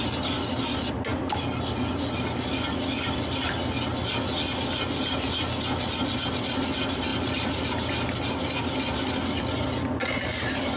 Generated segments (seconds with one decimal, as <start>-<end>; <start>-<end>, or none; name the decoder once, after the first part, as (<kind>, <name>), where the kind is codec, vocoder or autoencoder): none